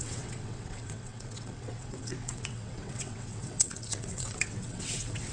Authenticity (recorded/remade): remade